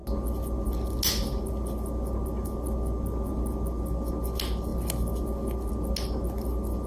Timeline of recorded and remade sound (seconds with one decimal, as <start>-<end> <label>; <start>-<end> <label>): 0.0-6.9 recorded